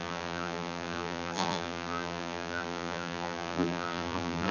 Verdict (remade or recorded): remade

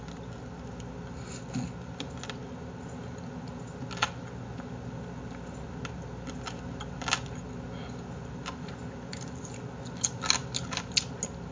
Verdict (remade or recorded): recorded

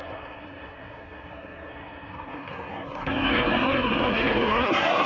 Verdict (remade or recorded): remade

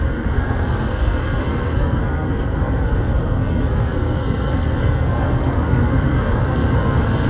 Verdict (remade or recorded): remade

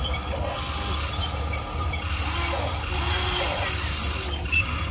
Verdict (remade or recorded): recorded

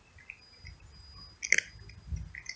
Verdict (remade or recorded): recorded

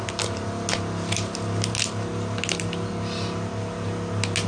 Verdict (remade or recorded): recorded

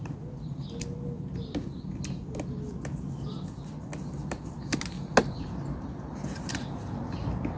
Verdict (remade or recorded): recorded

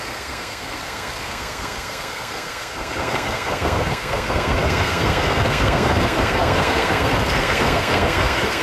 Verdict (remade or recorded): remade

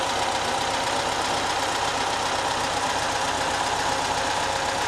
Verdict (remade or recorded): recorded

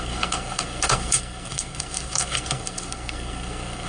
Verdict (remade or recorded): remade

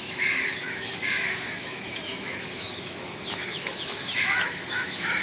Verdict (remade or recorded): remade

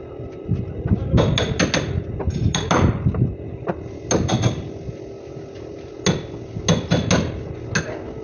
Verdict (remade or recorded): recorded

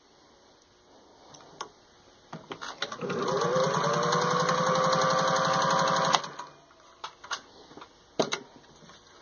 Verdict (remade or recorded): recorded